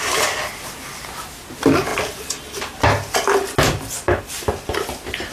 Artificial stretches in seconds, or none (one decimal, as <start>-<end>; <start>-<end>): none